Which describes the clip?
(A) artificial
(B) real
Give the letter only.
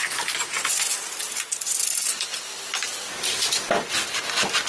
B